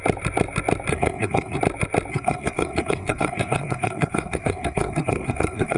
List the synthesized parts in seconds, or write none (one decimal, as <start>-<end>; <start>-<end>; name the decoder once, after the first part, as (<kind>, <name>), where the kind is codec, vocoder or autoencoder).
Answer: 0.9-1.6 (codec, SNAC); 2.1-5.8

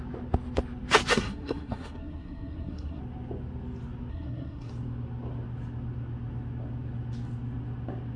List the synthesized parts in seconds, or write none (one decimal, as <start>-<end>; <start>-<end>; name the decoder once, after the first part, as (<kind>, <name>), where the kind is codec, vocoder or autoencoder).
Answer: 1.1-3.0 (codec, SNAC); 4.1-4.7

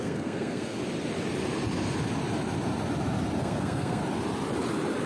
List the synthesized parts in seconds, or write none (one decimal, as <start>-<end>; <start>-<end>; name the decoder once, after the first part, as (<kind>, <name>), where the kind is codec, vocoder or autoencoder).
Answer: 0.0-0.8 (codec, SNAC); 3.4-4.0

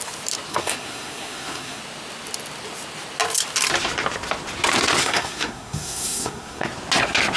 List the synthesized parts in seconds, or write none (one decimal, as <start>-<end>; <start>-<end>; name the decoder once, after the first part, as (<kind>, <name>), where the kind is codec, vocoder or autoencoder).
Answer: 0.5-1.8 (codec, SNAC); 5.0-6.7

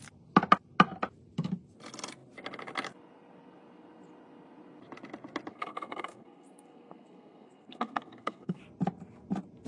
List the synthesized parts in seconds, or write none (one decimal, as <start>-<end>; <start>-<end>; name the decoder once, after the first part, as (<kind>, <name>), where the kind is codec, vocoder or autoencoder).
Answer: 5.5-8.6 (codec, SNAC)